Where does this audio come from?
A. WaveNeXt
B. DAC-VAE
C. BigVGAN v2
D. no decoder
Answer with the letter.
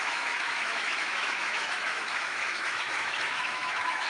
B